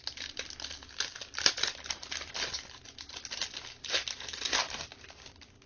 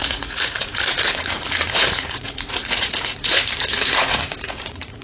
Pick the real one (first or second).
first